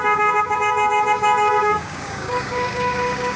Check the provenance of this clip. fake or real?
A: fake